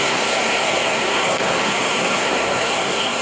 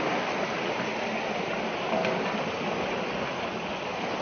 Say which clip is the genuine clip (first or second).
second